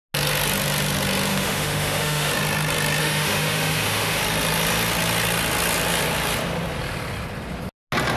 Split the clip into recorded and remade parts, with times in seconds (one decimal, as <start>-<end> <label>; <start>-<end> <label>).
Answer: 0.0-1.3 recorded; 1.3-2.3 remade; 2.3-3.0 recorded; 3.0-4.2 remade; 4.2-8.2 recorded